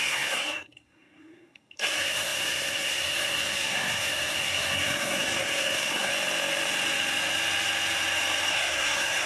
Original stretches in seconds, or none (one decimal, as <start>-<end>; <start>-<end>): 6.1-8.5